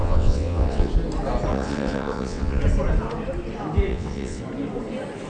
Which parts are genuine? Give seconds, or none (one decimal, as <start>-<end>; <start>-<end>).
0.9-1.5; 2.6-3.9; 4.4-5.3